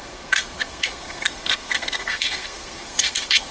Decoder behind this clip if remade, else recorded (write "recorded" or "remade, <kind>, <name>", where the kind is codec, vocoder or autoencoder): remade, codec, SNAC